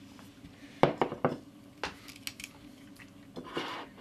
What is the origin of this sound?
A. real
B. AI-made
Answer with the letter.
A